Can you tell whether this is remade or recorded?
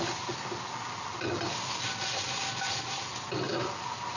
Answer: recorded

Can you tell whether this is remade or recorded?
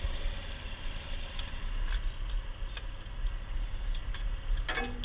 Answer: recorded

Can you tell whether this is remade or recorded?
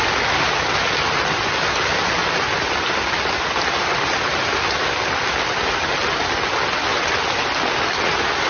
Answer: recorded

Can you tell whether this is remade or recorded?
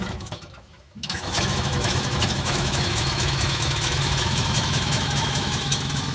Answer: remade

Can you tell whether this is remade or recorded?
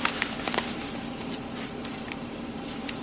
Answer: remade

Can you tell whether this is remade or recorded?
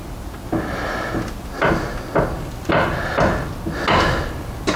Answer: recorded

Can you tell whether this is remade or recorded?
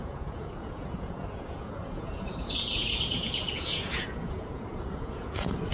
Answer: remade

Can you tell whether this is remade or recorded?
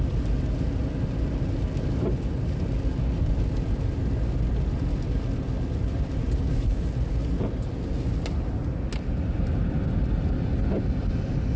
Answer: recorded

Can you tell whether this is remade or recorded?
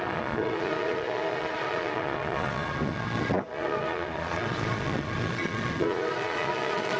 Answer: remade